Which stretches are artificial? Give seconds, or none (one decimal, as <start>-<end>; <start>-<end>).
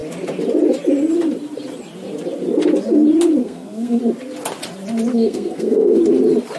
3.4-4.0; 5.1-6.0